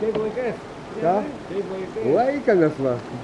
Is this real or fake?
real